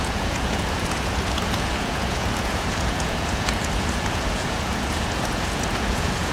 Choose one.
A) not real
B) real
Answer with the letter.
A